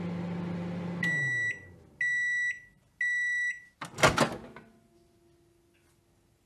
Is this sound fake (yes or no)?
no